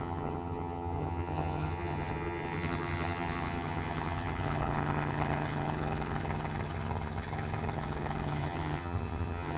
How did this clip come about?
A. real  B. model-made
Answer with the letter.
B